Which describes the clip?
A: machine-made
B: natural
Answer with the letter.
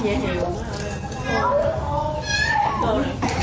B